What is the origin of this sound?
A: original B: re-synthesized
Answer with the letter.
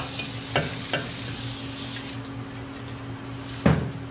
A